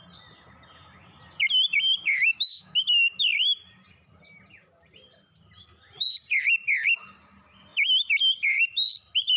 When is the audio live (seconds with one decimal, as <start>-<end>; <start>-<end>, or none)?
0.0-2.0; 2.9-7.7; 8.6-9.4